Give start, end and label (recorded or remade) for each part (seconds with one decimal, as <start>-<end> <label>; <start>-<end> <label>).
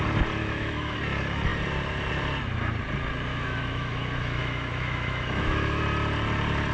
0.0-0.4 recorded; 0.4-1.0 remade; 1.0-3.3 recorded; 3.3-5.8 remade; 5.8-6.7 recorded